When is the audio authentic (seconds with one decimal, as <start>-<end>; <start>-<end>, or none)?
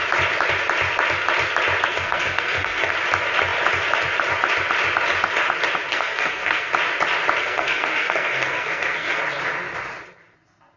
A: 0.0-1.9; 2.9-5.9; 6.7-7.4; 9.2-10.8